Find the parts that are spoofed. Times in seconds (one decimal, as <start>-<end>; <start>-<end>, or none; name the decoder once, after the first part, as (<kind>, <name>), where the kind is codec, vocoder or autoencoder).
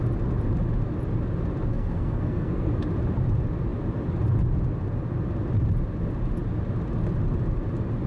1.7-2.7 (codec, SNAC)